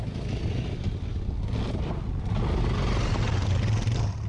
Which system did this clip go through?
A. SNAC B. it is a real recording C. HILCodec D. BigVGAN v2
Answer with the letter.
B